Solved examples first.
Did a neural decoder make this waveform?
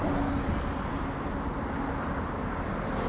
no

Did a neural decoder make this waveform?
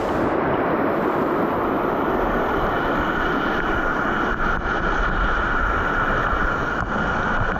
no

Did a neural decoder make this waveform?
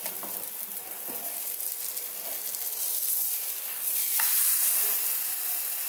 yes